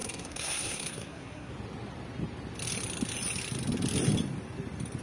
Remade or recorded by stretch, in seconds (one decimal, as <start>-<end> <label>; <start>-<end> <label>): 0.0-1.5 remade; 1.5-5.0 recorded